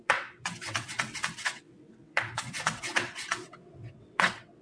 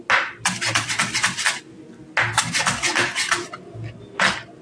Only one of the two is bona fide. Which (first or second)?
second